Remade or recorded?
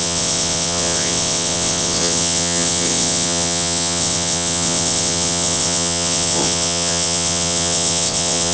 remade